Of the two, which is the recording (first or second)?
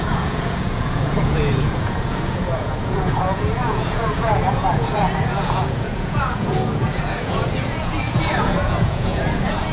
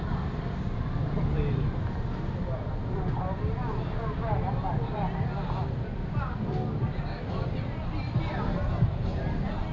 second